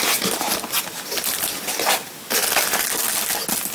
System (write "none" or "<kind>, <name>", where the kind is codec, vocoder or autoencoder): none